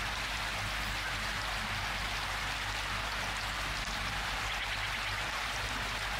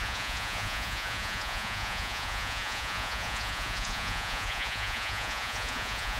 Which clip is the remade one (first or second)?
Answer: second